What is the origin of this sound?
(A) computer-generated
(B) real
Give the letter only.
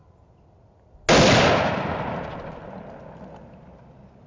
B